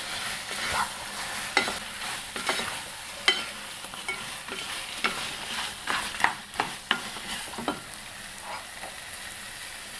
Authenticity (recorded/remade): recorded